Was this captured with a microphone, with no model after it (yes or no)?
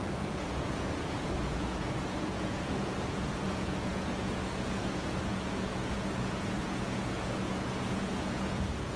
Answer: no